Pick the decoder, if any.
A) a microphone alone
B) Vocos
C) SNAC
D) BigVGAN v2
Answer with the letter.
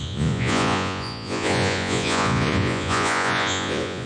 B